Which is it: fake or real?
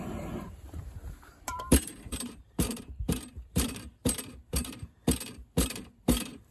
fake